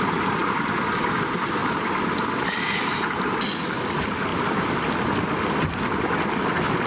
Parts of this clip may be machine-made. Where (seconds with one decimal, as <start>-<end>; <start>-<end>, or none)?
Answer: 1.6-2.9